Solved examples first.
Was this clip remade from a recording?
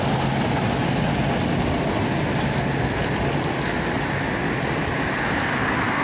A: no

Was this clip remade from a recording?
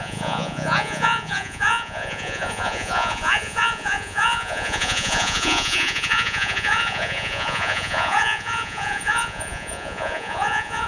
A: yes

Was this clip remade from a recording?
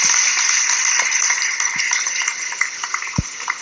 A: no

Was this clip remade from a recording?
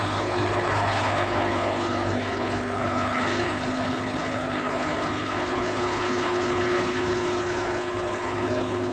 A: yes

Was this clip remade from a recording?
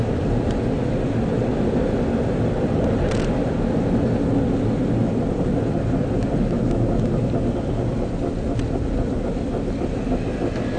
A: no